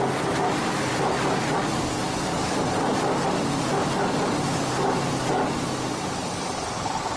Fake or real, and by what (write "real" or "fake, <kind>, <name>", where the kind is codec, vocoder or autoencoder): fake, vocoder, BigVGAN v2